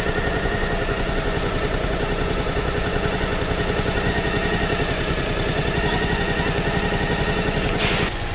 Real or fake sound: fake